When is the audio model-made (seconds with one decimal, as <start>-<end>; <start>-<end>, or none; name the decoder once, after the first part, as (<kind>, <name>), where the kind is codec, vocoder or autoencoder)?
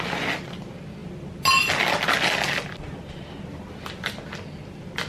none